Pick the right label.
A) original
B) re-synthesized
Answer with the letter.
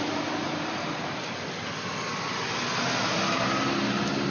A